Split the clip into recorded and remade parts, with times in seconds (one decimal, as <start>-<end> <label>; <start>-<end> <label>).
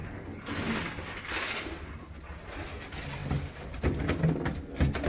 0.0-5.1 recorded